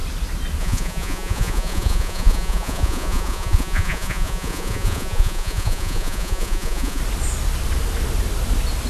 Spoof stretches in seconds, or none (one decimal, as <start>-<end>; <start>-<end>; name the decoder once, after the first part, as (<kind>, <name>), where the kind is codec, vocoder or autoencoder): 0.6-7.0 (vocoder, Vocos)